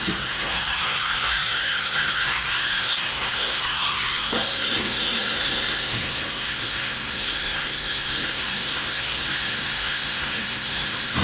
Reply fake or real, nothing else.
fake